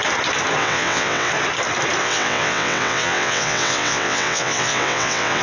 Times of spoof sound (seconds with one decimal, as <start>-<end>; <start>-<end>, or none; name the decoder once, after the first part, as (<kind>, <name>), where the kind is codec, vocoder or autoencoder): 0.6-1.3 (vocoder, WaveNeXt); 2.0-5.4